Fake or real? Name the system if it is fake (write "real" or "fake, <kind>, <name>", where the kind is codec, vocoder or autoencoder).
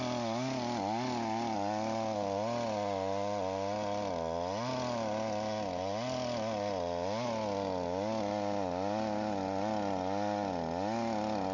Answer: real